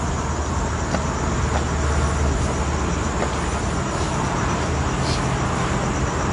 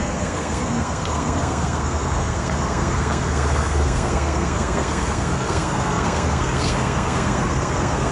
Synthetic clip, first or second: second